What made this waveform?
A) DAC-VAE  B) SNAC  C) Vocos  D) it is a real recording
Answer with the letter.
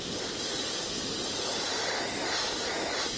D